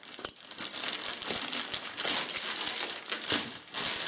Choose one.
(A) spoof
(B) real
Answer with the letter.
B